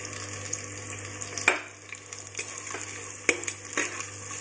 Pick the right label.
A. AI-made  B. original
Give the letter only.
B